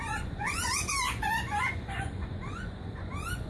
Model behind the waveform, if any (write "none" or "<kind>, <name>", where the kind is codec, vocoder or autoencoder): vocoder, Vocos